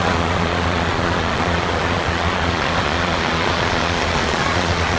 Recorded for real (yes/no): no